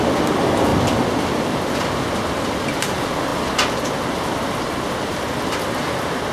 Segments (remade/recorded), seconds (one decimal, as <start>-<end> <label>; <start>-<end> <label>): 0.0-6.3 recorded